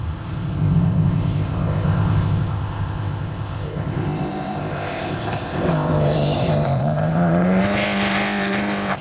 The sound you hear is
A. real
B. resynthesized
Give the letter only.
B